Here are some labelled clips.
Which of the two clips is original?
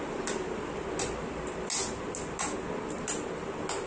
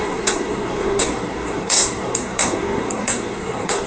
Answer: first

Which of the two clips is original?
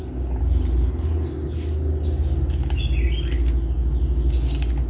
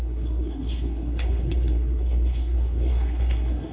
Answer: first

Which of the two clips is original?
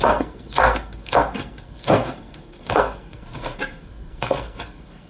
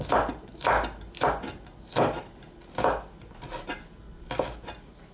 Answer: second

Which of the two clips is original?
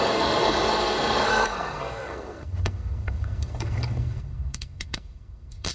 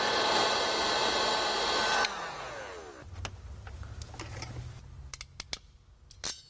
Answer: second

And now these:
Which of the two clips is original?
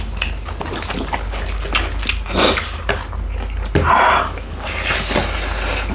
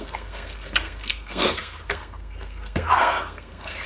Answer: first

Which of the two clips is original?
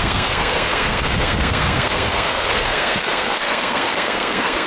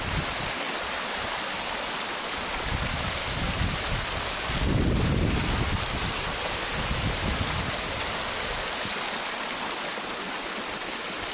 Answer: second